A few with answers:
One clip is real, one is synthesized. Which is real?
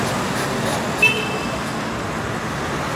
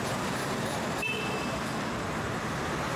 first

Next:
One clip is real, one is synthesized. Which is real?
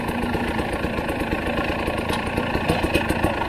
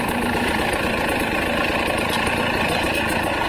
first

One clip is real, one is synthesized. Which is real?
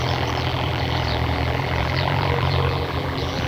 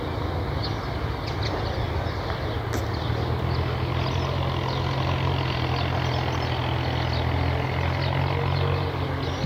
second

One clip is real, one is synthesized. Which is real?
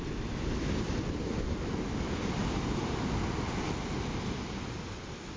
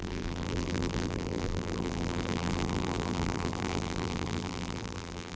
first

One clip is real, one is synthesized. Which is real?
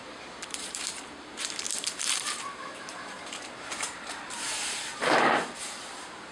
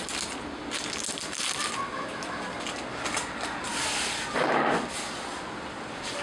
second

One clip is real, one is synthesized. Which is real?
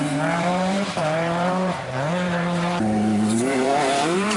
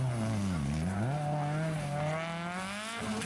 second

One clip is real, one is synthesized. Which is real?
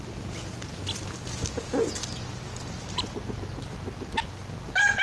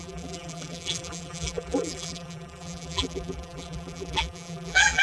first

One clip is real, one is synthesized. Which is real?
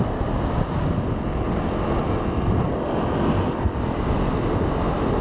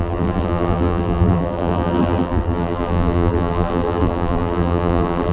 first